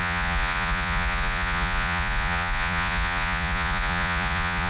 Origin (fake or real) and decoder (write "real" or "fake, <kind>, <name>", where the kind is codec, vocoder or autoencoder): fake, vocoder, Vocos